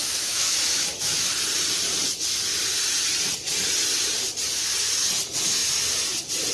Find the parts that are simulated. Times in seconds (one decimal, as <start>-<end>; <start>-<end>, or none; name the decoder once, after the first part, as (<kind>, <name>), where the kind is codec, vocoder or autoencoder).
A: 0.0-1.3 (autoencoder, DAC-VAE)